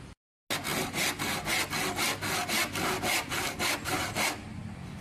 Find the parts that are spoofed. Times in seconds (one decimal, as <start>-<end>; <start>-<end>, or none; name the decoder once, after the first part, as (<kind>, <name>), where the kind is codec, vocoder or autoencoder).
none